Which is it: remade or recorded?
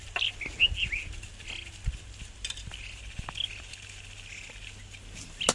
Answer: recorded